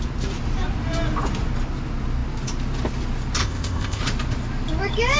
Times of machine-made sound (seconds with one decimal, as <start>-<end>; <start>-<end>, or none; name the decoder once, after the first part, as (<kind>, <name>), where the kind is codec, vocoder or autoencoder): 3.4-4.0 (codec, ZipCodec)